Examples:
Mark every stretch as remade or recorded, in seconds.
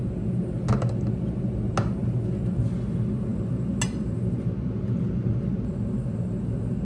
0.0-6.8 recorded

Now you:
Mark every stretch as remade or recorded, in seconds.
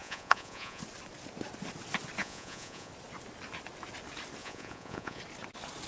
0.0-0.8 remade; 0.8-2.2 recorded; 2.2-2.9 remade; 2.9-4.4 recorded; 4.4-5.2 remade; 5.2-5.9 recorded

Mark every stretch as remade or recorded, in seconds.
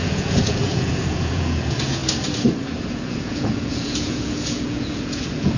0.0-2.0 remade; 2.0-2.8 recorded; 2.8-5.6 remade